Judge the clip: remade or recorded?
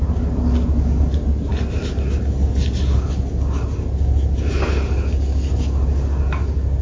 recorded